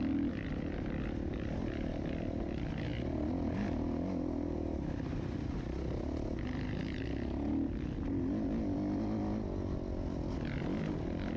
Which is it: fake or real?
real